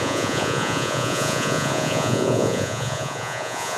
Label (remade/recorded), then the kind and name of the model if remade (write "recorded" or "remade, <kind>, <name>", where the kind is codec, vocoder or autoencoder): remade, vocoder, Vocos